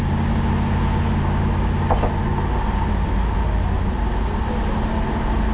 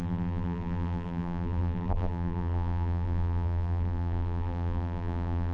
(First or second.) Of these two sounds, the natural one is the first